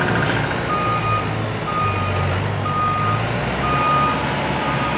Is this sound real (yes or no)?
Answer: yes